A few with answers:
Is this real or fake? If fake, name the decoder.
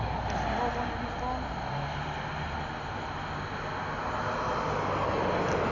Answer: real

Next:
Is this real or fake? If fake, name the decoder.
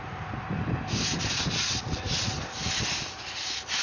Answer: real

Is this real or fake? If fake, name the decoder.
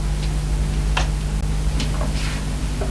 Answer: real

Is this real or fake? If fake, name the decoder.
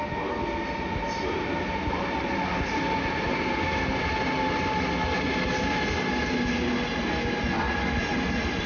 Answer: real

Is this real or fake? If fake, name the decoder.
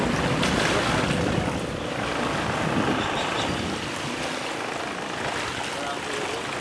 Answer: real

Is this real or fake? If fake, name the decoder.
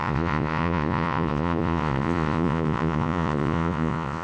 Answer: fake, vocoder, Vocos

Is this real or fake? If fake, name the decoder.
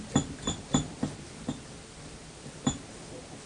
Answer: real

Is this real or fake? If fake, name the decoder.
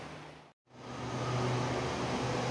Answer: real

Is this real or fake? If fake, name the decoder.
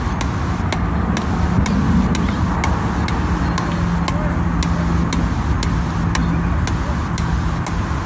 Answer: real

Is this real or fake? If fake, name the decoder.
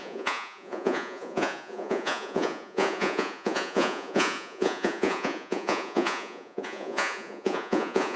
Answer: fake, vocoder, Vocos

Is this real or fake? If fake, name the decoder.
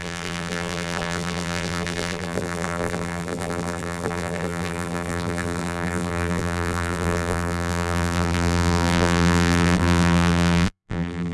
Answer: fake, vocoder, BigVGAN v2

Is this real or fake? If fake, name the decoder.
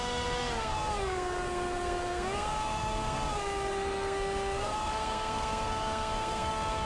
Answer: fake, codec, SNAC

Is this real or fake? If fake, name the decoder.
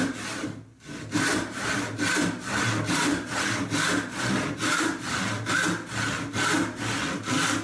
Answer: real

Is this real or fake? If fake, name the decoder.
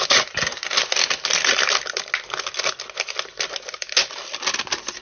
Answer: real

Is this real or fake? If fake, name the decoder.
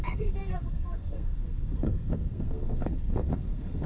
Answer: fake, codec, SNAC